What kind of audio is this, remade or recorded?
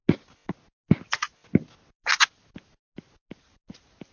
recorded